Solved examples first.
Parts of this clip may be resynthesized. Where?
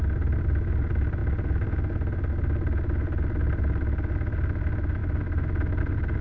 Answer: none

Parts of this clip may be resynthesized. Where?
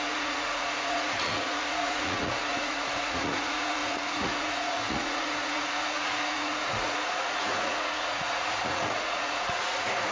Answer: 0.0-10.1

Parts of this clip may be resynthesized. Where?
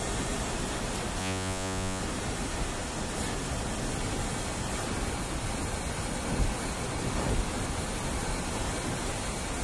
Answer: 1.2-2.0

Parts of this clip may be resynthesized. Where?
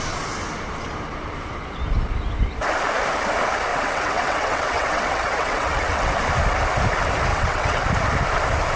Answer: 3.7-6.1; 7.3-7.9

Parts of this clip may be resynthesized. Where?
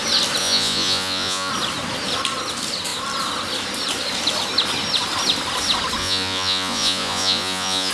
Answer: 0.4-1.5; 6.0-7.9